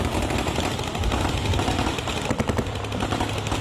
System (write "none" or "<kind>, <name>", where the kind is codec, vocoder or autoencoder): none